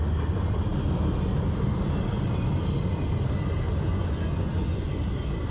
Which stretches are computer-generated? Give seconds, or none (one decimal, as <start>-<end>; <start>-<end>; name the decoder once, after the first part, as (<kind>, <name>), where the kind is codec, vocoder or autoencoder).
3.9-4.9 (vocoder, Vocos)